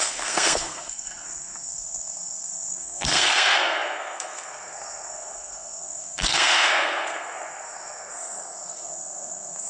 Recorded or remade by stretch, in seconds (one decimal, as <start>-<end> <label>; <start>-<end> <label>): 0.0-9.7 remade